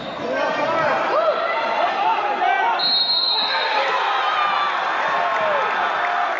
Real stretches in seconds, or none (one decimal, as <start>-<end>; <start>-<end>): 0.0-6.4